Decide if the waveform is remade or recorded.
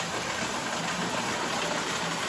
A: recorded